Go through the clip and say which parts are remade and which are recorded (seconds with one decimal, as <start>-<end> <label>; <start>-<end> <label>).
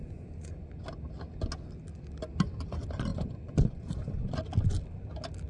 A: 0.0-0.7 remade; 0.7-3.1 recorded; 3.1-4.4 remade; 4.4-5.5 recorded